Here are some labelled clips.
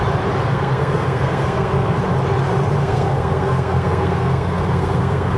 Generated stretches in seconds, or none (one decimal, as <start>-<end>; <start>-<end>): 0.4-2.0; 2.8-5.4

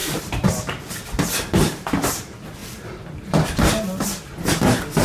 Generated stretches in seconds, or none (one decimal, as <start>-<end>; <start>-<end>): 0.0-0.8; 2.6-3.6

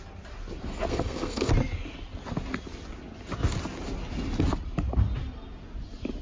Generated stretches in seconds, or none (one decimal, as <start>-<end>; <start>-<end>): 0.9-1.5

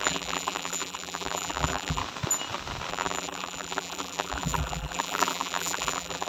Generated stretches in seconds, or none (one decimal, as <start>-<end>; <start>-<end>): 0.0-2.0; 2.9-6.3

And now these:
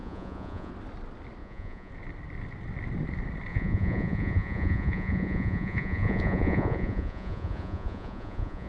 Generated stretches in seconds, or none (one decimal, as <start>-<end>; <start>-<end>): 0.0-0.7; 1.4-1.9; 3.5-8.7